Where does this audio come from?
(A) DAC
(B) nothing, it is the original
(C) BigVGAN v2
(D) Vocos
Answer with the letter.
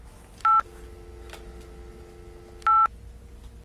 B